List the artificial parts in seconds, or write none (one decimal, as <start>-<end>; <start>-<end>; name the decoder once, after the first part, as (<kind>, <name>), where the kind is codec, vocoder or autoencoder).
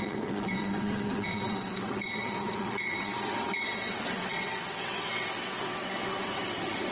0.0-6.9 (vocoder, WaveNeXt)